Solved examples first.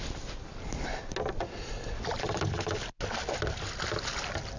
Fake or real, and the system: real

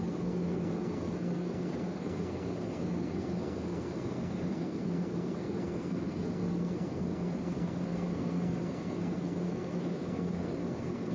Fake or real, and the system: fake, codec, SNAC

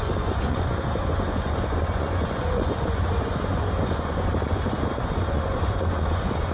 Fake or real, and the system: fake, vocoder, Vocos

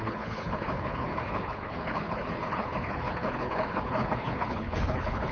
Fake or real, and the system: fake, codec, HILCodec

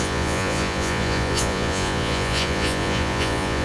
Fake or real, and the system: fake, vocoder, Vocos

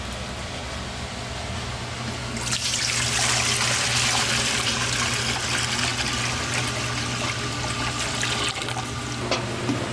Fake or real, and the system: real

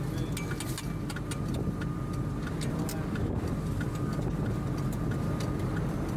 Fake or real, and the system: real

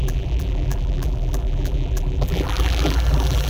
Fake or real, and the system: fake, vocoder, BigVGAN v2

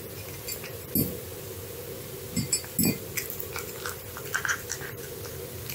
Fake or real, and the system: real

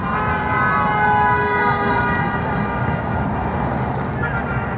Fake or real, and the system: real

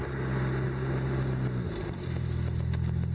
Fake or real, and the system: real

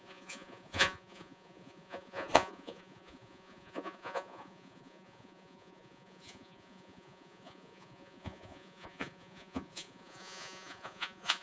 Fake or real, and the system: fake, vocoder, Vocos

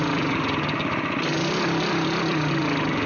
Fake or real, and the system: real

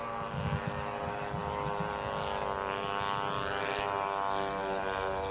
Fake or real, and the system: real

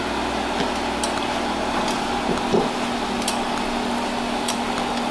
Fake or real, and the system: real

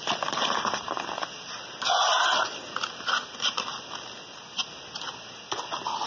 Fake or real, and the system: real